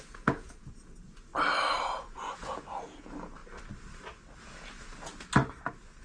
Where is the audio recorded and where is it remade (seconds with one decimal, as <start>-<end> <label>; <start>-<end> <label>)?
0.0-1.3 remade; 1.3-1.8 recorded; 1.8-3.4 remade; 3.4-4.4 recorded; 4.4-5.1 remade; 5.1-6.0 recorded